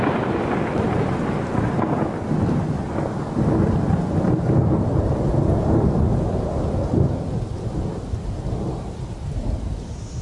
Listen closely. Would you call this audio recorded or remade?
recorded